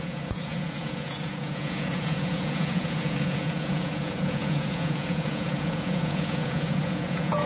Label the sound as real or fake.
fake